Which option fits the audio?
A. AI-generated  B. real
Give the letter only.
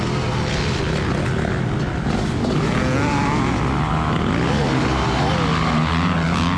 B